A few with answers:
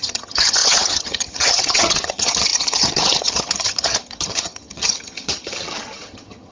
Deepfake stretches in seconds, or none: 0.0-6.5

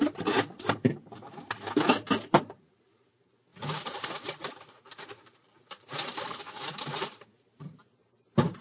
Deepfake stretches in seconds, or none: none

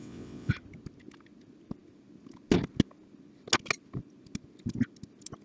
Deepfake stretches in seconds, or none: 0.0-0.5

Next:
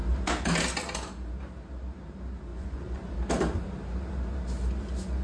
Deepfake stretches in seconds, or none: 2.5-3.1